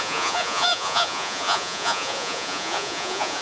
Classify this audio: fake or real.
fake